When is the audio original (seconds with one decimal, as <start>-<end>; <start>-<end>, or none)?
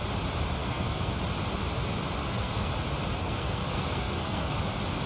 0.0-0.6; 1.2-2.2; 2.7-3.2; 4.6-5.1